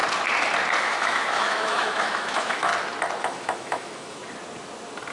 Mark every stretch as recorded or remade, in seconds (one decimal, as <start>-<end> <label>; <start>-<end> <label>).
0.0-0.8 recorded; 0.8-2.7 remade; 2.7-3.2 recorded; 3.2-4.2 remade; 4.2-5.1 recorded

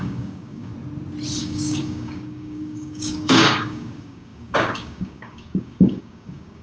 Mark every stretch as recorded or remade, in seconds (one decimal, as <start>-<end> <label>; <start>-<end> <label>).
0.0-0.7 remade; 0.7-1.4 recorded; 1.4-6.6 remade

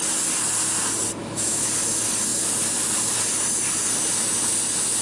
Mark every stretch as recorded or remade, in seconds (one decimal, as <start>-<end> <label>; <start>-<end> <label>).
0.0-1.2 recorded; 1.2-1.7 remade; 1.7-5.0 recorded